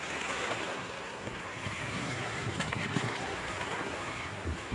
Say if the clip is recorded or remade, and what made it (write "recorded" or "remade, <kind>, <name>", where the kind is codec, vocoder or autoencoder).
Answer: remade, codec, SNAC